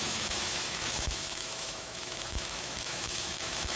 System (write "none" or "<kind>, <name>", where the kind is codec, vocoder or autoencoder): autoencoder, DAC-VAE